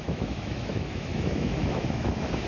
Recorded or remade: remade